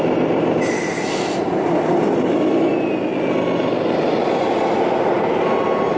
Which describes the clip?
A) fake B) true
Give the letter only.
B